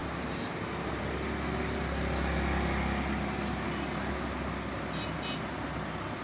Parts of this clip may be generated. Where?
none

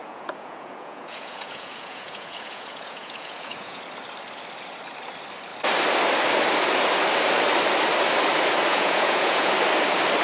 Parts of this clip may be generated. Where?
0.0-3.8; 8.7-9.5

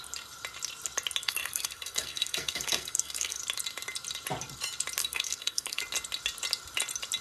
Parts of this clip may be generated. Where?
1.2-3.4; 5.0-5.8

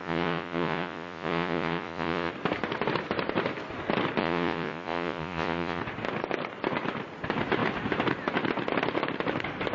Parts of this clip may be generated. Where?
0.0-2.3; 4.2-5.8

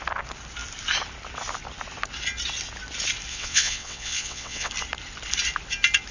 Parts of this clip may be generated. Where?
3.3-4.7

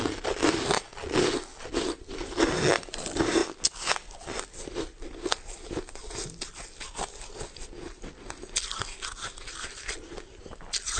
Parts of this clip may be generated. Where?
none